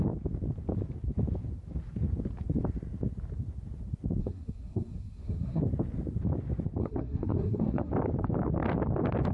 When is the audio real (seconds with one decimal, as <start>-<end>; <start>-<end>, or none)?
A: 0.0-4.2; 5.6-6.8; 7.9-9.3